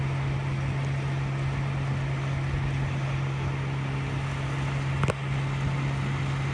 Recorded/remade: recorded